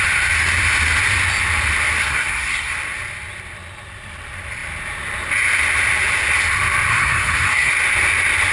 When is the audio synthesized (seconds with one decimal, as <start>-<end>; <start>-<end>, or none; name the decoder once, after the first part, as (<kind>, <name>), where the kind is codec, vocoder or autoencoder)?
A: 2.0-2.7 (codec, SNAC); 6.9-7.7